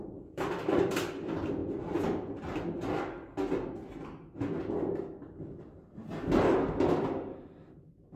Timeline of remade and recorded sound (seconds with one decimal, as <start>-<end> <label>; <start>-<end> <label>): 0.0-1.6 remade; 1.6-6.5 recorded; 6.5-8.2 remade